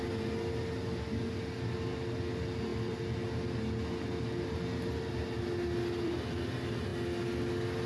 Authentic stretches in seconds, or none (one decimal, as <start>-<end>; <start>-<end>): 0.0-7.9